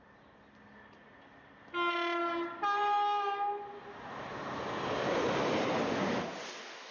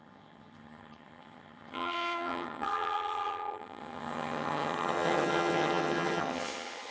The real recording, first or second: first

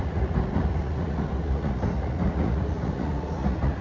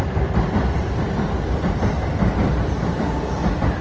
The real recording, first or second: second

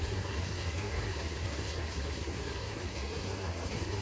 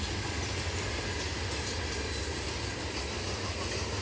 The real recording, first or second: second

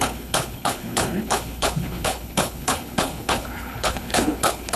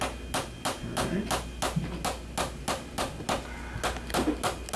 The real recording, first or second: second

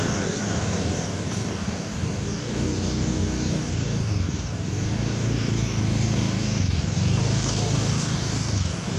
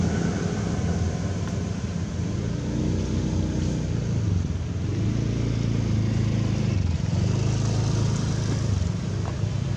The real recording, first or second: second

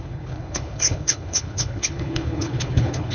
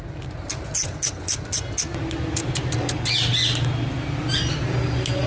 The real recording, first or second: second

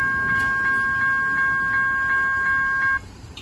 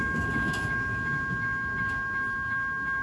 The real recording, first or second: first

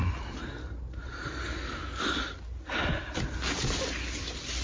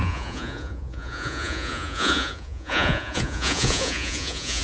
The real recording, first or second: first